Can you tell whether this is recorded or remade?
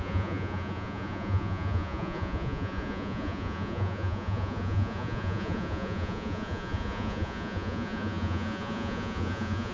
remade